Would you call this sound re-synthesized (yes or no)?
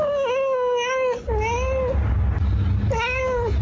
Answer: no